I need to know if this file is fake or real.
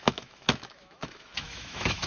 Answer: fake